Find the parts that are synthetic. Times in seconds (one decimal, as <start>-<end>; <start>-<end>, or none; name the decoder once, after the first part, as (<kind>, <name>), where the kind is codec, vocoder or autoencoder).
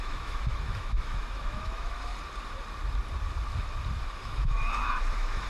0.0-2.1 (autoencoder, DAC-VAE); 4.0-5.5